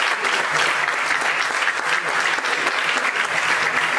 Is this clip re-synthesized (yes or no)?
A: no